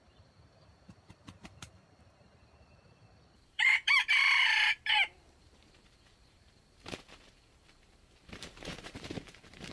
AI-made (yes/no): yes